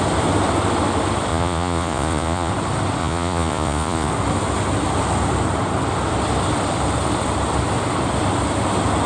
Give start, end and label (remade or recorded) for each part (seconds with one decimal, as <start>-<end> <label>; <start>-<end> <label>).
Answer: 0.0-1.3 recorded; 1.3-2.5 remade; 2.5-3.0 recorded; 3.0-4.1 remade; 4.1-9.1 recorded